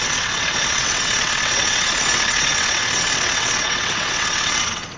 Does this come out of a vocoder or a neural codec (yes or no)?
yes